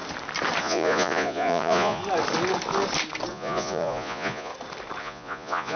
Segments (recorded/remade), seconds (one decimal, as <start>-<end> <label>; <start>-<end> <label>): 0.0-0.6 recorded; 0.6-2.0 remade; 2.0-3.3 recorded; 3.3-4.5 remade; 4.5-5.0 recorded; 5.0-5.8 remade